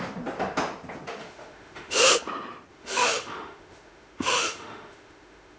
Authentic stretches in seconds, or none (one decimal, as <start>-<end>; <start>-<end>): 0.0-1.2; 2.1-2.7